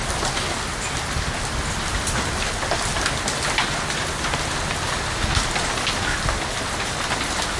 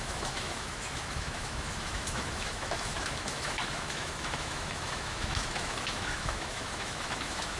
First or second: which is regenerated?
second